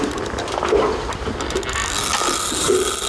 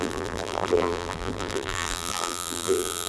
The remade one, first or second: second